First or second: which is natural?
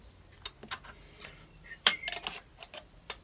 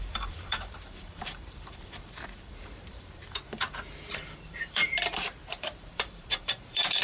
first